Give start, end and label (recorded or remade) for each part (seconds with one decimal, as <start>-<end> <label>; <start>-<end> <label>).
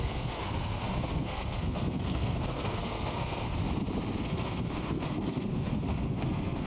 0.0-3.6 remade; 3.6-4.2 recorded; 4.2-6.7 remade